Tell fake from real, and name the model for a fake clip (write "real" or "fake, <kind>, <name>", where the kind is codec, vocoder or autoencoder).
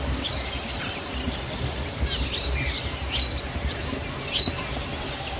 real